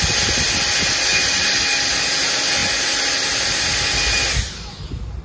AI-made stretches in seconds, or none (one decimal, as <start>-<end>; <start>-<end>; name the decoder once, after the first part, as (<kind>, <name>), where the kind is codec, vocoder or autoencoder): 1.1-1.9 (vocoder, BigVGAN v2); 2.6-3.6